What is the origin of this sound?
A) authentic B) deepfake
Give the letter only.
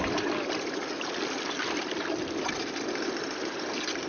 A